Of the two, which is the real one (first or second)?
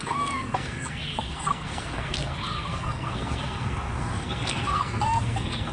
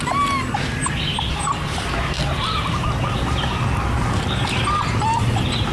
second